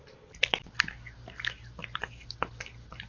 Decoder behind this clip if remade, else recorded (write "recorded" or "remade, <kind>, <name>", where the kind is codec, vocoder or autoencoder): recorded